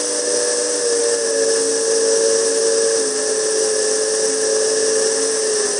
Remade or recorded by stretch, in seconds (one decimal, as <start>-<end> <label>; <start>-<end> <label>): 0.0-5.8 recorded